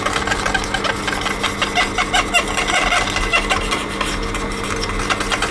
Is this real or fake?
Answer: real